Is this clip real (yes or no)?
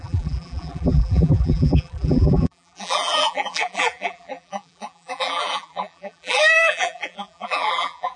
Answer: no